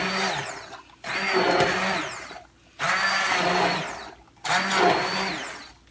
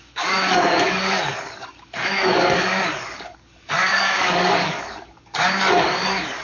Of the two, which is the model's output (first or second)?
second